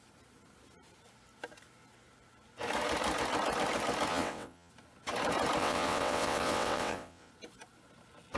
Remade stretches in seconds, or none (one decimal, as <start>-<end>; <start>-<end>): 4.1-4.7; 5.6-7.3